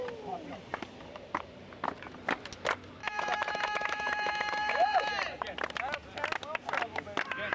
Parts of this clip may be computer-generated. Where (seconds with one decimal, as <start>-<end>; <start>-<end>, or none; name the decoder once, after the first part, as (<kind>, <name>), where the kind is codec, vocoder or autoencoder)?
3.0-5.1 (autoencoder, DAC-VAE)